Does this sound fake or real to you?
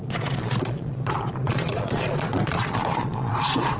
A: fake